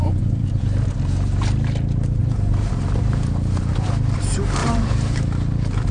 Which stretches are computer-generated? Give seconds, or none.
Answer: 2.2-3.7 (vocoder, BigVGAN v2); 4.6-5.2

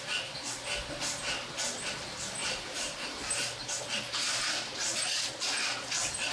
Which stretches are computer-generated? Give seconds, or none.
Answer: 2.4-3.8 (vocoder, BigVGAN v2)

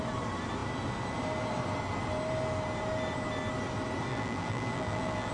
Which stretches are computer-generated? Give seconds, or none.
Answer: 4.1-5.3 (vocoder, BigVGAN v2)

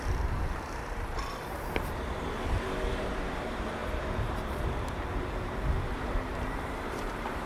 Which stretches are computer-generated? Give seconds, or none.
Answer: 0.0-7.5 (vocoder, BigVGAN v2)

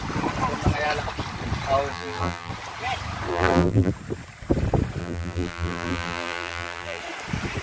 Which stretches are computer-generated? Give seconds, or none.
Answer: 1.9-2.5 (vocoder, BigVGAN v2); 3.3-3.9; 5.0-7.0

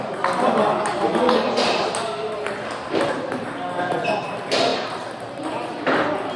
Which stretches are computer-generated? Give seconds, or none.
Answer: none